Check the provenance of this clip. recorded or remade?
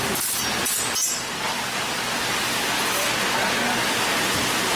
recorded